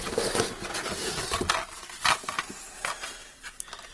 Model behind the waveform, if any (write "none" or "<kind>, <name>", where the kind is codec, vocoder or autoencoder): none